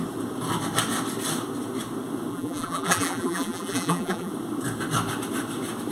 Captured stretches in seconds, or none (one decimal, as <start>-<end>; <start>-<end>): 0.0-2.3; 4.3-5.9